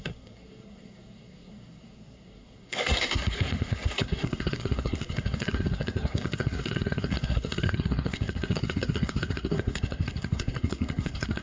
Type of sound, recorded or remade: remade